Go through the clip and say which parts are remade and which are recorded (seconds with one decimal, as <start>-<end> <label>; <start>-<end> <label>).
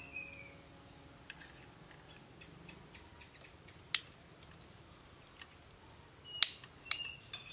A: 0.0-7.5 recorded